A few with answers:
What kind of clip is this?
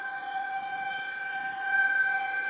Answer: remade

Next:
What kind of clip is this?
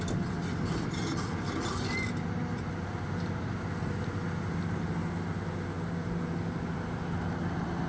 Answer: recorded